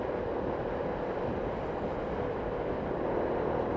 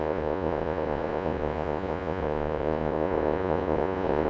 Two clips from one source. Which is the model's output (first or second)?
second